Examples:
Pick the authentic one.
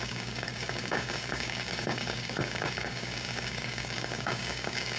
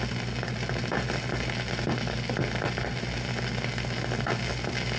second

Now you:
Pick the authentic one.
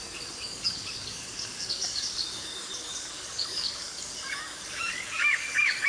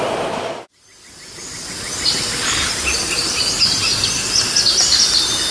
second